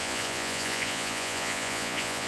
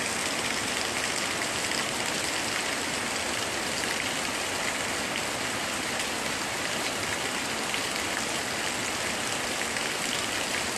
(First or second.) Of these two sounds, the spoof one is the first